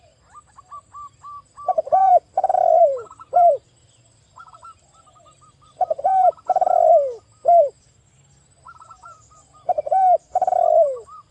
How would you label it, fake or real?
fake